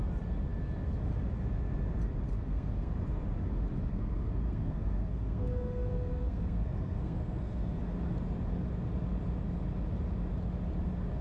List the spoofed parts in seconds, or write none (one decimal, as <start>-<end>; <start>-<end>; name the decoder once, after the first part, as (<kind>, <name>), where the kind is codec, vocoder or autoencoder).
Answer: 2.3-2.9 (codec, SNAC); 3.9-7.8